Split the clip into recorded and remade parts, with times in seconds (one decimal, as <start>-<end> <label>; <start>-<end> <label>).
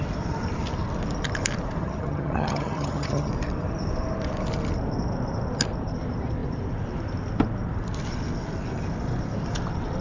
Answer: 0.0-1.8 recorded; 1.8-3.3 remade; 3.3-10.0 recorded